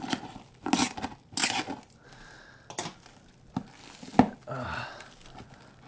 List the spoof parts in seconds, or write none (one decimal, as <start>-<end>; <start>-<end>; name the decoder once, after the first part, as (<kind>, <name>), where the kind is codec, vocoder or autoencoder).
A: none